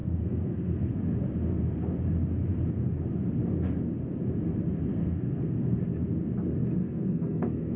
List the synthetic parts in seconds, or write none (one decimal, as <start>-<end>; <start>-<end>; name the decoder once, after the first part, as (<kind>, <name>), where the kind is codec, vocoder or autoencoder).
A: 0.0-1.0 (codec, SNAC); 4.9-5.8; 6.8-7.8